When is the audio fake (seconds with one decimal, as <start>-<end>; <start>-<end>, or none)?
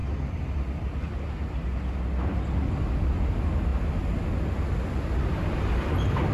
none